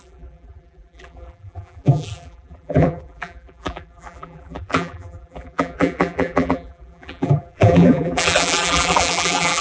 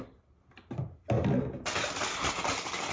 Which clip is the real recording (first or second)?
second